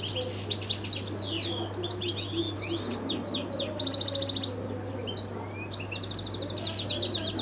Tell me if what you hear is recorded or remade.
recorded